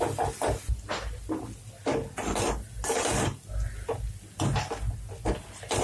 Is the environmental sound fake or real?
real